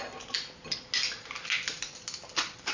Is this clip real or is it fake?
real